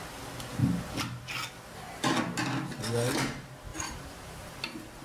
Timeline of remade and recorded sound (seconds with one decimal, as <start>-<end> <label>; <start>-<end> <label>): 0.0-3.7 recorded; 3.7-4.5 remade; 4.5-5.0 recorded